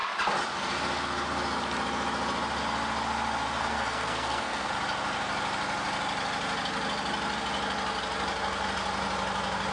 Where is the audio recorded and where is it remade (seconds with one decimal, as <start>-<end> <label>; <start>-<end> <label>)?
0.0-3.6 recorded; 3.6-4.7 remade; 4.7-9.7 recorded